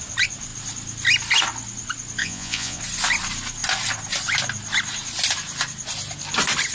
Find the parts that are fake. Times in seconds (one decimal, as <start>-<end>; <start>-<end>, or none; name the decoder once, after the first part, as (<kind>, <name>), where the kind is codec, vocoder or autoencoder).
2.2-2.8 (vocoder, Vocos)